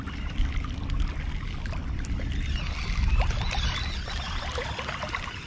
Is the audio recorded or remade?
recorded